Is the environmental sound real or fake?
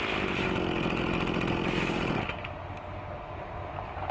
real